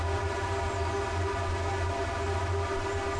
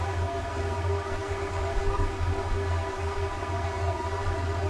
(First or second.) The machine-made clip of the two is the second